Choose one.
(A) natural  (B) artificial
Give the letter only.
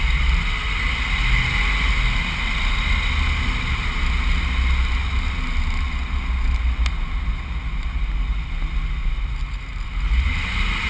A